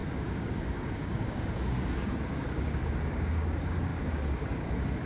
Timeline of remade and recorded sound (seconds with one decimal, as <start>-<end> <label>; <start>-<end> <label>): 0.0-5.1 remade